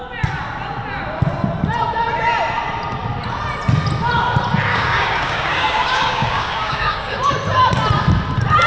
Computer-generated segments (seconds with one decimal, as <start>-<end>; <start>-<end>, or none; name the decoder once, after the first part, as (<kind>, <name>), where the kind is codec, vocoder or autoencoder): 4.7-7.3 (codec, DAC)

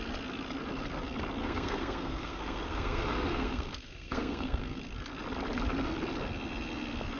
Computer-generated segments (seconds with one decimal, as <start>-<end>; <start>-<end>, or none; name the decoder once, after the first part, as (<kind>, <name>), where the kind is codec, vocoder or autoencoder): 1.4-4.8 (codec, SNAC)

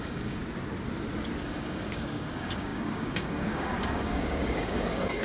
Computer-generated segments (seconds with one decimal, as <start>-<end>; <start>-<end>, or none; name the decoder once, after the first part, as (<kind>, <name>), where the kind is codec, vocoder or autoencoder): 0.0-0.4 (codec, DAC); 1.4-5.2

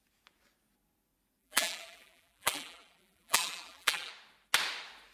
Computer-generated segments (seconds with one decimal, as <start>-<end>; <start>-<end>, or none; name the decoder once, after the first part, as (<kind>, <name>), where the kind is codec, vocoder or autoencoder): 1.4-4.1 (vocoder, BigVGAN v2)

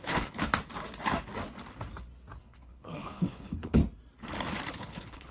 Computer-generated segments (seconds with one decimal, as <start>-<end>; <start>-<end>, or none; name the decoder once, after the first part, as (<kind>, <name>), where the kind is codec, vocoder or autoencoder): 0.0-0.5 (codec, HILCodec); 2.4-3.8; 4.7-5.3

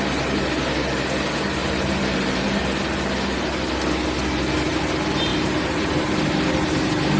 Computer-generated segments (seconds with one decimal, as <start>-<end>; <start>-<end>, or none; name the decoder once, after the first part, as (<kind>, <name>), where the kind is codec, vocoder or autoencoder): 1.6-2.6 (vocoder, BigVGAN v2); 5.3-6.0

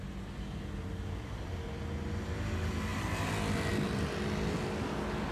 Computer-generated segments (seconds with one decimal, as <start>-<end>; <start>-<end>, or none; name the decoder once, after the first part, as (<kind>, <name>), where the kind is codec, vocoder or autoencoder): none